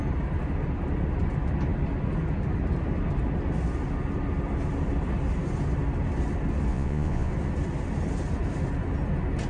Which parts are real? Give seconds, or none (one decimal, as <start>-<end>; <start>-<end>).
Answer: 0.0-6.7; 7.3-9.5